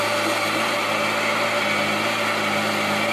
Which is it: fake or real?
real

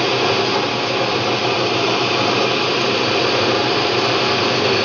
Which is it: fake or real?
real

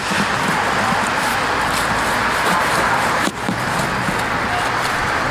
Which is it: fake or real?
real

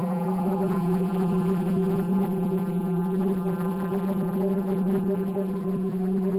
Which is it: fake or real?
fake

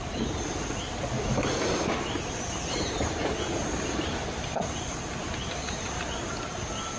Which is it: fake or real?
real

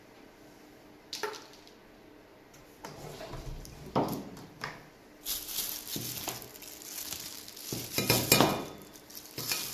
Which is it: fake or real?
real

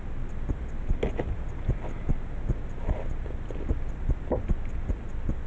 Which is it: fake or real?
real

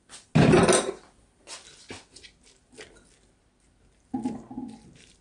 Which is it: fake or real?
real